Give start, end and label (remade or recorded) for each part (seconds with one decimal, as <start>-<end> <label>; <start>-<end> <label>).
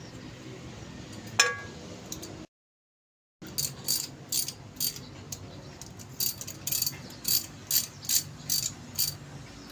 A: 0.0-9.7 recorded